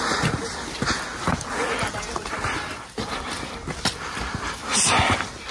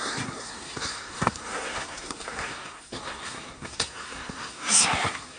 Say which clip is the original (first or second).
first